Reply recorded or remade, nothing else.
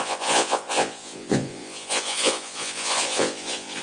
remade